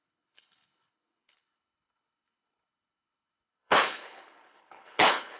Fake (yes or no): yes